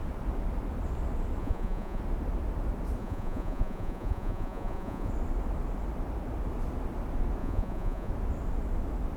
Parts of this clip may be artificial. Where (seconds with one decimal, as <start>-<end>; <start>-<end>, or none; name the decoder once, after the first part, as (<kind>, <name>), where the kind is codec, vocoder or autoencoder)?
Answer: 1.4-2.0 (vocoder, Vocos); 3.0-5.1; 7.4-8.1